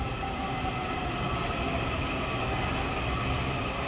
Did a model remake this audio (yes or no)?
no